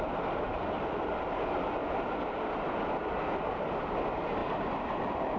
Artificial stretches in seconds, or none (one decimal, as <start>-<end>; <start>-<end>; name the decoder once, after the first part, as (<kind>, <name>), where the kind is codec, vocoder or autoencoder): none